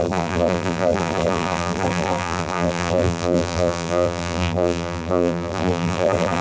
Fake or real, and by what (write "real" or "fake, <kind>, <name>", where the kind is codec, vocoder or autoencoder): fake, vocoder, BigVGAN v2